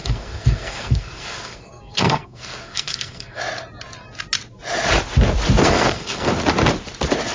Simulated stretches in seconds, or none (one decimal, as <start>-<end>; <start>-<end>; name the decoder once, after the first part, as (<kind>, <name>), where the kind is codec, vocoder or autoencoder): 0.0-3.4 (codec, SNAC); 5.6-6.3

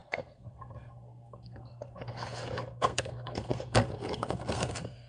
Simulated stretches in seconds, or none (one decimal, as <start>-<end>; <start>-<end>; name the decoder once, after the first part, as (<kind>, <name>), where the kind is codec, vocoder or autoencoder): 0.0-5.1 (codec, SNAC)

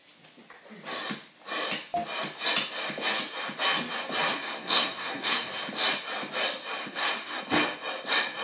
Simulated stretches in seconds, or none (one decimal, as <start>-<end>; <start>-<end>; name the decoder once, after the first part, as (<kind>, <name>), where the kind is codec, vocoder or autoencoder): 4.3-5.5 (codec, SNAC); 6.8-7.4

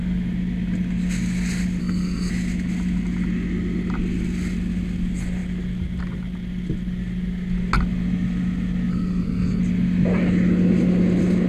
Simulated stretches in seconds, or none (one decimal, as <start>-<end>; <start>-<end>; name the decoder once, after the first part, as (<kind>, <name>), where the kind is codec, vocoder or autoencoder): 1.8-2.3 (codec, SNAC); 8.9-9.6

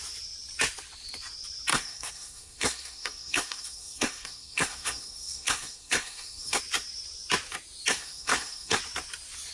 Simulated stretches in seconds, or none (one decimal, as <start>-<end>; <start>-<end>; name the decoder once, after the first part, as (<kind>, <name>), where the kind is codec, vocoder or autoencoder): 1.7-6.6 (codec, SNAC); 7.9-8.8

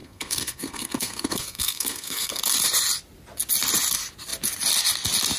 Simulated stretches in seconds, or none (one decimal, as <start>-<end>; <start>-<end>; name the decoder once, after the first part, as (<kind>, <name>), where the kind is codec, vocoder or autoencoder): 0.0-2.4 (codec, SNAC)

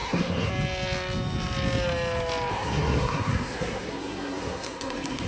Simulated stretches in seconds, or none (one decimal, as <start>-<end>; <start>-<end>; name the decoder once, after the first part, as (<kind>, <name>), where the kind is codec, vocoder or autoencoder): 0.0-0.5 (codec, SNAC); 2.5-5.3